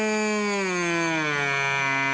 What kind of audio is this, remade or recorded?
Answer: recorded